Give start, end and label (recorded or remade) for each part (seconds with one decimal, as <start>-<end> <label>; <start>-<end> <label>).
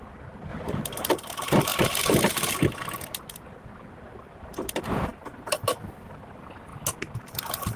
0.0-7.8 recorded